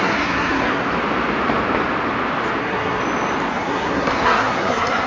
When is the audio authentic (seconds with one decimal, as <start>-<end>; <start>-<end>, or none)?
0.9-2.6; 3.0-3.5